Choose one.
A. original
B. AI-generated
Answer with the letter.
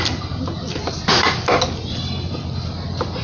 A